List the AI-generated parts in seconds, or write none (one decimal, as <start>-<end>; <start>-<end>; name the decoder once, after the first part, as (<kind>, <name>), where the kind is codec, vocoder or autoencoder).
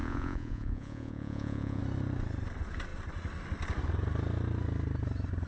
0.0-1.8 (vocoder, Vocos)